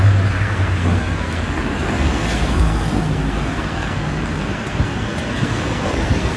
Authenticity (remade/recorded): remade